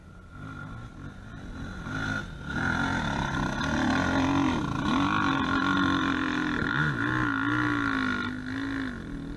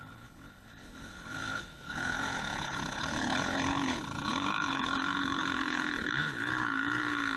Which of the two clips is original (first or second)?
first